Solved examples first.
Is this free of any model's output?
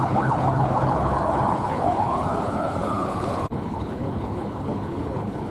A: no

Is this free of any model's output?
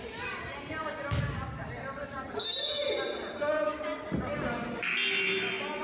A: yes